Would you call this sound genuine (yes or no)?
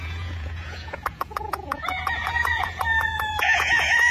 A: no